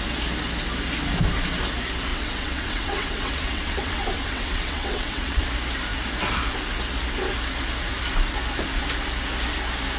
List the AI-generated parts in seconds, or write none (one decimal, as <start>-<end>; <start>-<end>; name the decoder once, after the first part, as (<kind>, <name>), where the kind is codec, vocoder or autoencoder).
2.1-5.4 (vocoder, WaveNeXt)